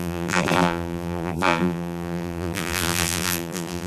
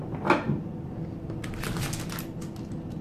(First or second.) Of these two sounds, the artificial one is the first